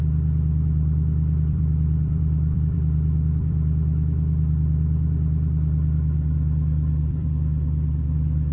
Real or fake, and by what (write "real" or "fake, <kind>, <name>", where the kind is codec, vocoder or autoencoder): fake, vocoder, BigVGAN v2